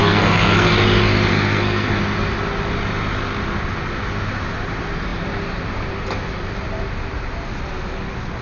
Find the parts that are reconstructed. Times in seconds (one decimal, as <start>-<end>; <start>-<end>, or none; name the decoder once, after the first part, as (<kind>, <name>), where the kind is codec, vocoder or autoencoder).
0.0-0.7 (codec, SNAC); 1.3-2.0